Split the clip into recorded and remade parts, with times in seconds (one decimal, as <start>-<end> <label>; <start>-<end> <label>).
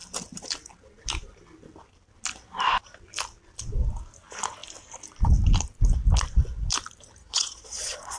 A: 0.0-7.2 recorded; 7.2-8.2 remade